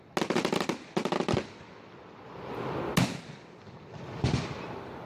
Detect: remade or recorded recorded